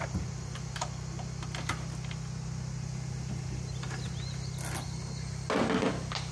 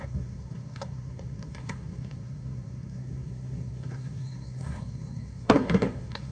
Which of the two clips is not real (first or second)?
second